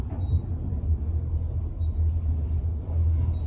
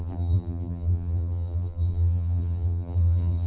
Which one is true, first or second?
first